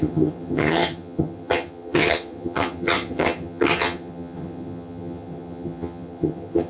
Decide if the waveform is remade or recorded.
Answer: remade